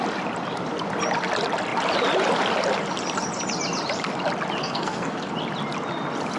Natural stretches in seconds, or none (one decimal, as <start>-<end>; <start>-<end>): 0.0-4.6; 5.3-6.4